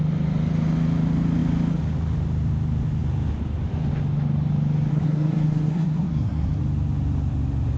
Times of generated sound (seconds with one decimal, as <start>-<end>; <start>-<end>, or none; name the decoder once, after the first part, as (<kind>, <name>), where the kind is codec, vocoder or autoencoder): 4.9-6.6 (codec, SNAC)